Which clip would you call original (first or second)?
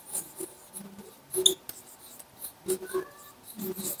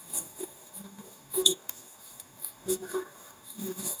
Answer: first